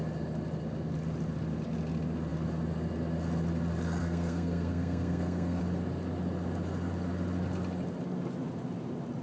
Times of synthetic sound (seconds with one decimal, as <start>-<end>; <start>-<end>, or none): 4.0-5.6